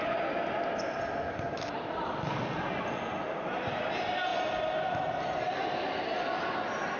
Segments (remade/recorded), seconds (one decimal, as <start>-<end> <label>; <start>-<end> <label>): 0.0-7.0 recorded